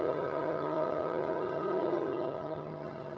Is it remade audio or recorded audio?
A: remade